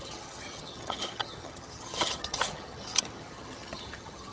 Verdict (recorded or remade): remade